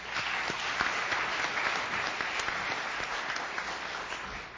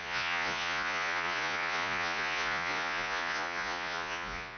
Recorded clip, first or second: first